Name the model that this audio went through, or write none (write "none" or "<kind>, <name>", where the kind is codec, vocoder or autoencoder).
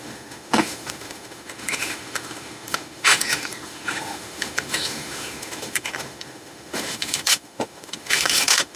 autoencoder, DAC-VAE